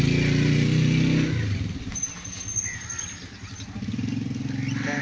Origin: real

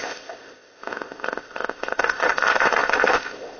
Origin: fake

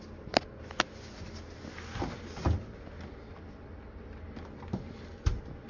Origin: real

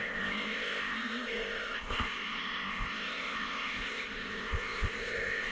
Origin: fake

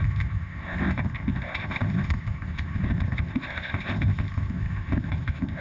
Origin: fake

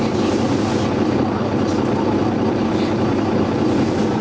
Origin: real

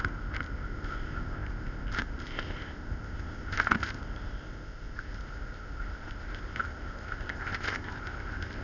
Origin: fake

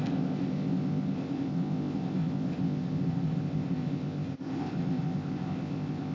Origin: fake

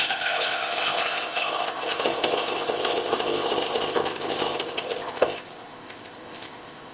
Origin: fake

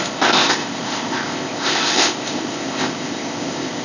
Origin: fake